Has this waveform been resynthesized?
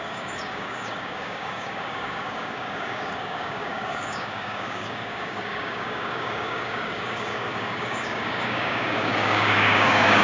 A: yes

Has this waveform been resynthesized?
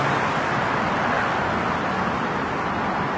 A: no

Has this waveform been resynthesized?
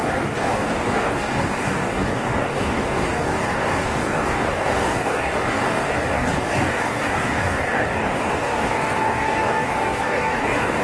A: yes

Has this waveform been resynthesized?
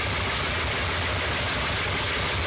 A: no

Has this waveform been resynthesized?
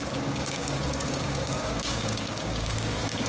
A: yes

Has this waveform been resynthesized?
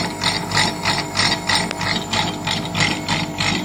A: no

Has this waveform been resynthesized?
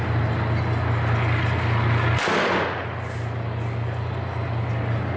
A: no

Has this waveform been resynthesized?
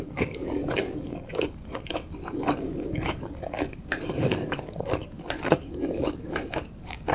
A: yes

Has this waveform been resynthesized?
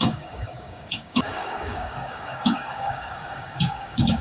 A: yes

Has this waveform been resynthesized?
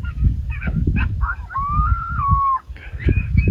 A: yes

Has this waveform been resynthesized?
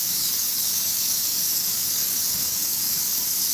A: yes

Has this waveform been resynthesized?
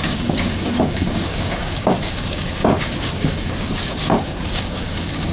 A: yes